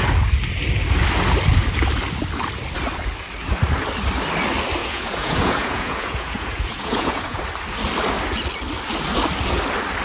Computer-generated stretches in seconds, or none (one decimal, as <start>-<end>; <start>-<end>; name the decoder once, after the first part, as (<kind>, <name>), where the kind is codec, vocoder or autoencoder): 4.8-7.4 (vocoder, Vocos)